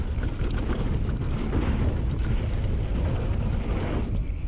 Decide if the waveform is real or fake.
real